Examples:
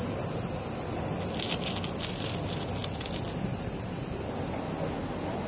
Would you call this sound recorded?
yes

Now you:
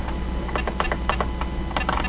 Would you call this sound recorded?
yes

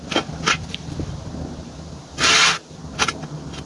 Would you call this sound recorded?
yes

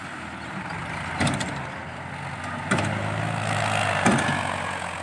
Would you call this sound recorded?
yes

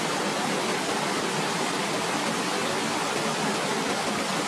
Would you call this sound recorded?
yes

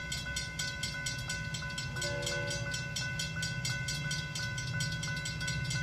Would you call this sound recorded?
yes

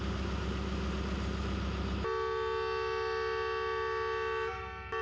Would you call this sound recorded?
yes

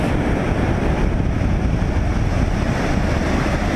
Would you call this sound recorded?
yes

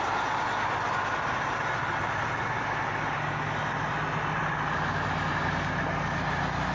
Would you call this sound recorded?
yes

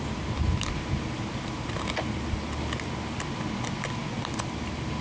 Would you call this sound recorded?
yes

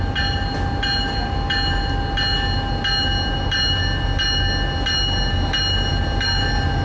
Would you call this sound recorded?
yes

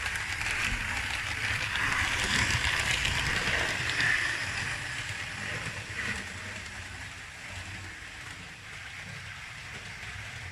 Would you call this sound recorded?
no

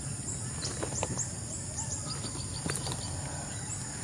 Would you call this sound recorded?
yes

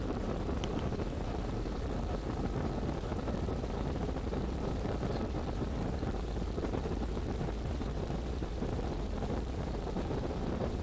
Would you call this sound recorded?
no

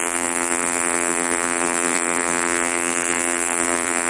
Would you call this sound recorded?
no